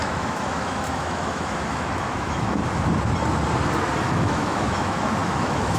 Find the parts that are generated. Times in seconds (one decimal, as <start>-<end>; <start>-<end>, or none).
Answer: 0.0-2.6; 4.0-5.8